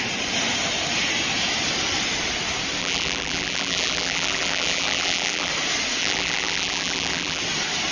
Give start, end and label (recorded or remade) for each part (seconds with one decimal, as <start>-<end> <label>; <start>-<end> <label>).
0.0-2.8 recorded; 2.8-5.5 remade; 5.5-6.0 recorded; 6.0-7.4 remade; 7.4-7.9 recorded